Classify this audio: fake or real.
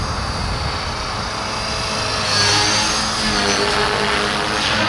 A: real